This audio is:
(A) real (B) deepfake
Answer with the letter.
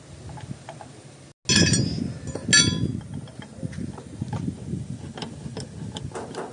A